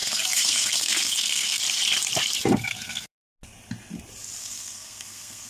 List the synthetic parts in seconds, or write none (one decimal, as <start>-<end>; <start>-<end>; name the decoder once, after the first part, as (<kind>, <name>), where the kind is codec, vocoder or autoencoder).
0.0-1.6 (codec, SNAC); 2.7-3.3; 4.4-5.5